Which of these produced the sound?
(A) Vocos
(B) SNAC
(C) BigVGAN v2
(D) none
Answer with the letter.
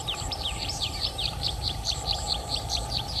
C